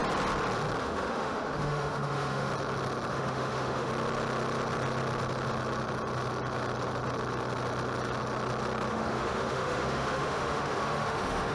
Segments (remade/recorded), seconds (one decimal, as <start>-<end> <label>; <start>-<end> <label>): 0.0-0.8 recorded; 0.8-2.5 remade; 2.5-3.1 recorded; 3.1-3.9 remade; 3.9-8.9 recorded; 8.9-11.5 remade